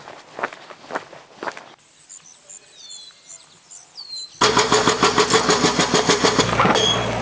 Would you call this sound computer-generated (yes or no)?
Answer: no